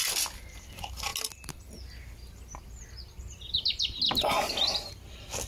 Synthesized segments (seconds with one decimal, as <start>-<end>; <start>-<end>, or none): none